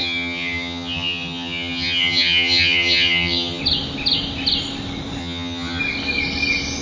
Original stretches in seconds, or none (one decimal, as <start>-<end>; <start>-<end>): 3.6-5.2; 5.8-6.8